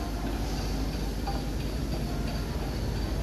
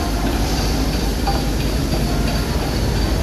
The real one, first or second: first